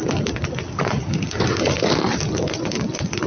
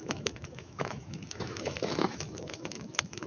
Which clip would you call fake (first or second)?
second